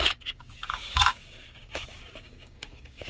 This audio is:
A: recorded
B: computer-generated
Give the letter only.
B